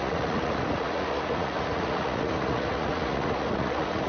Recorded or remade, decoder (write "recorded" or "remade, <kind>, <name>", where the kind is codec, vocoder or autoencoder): remade, vocoder, Vocos